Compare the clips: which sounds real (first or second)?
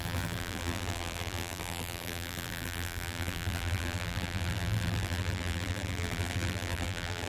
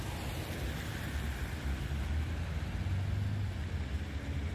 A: second